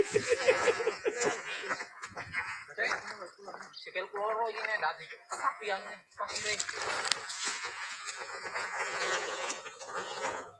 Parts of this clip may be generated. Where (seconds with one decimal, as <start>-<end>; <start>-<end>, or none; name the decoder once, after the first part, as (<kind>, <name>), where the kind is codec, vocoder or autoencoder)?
0.0-2.6 (vocoder, Vocos); 4.9-6.4; 7.2-10.6